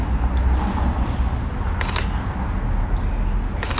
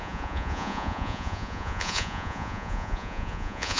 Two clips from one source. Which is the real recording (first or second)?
first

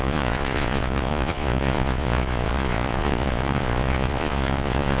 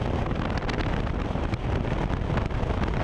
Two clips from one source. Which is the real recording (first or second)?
second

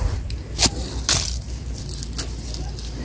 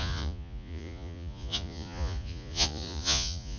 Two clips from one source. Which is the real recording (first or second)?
first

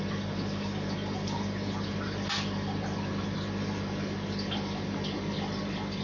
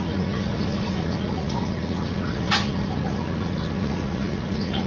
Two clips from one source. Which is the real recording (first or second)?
first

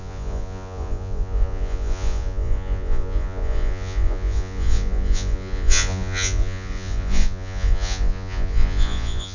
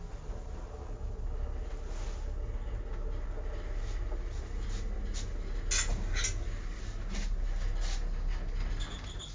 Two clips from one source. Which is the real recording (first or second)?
second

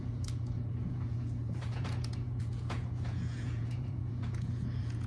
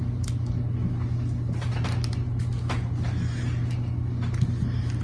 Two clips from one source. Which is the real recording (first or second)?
second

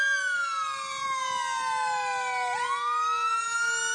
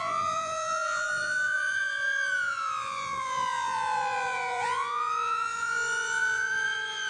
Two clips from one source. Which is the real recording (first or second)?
first